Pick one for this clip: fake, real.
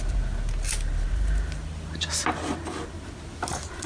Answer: real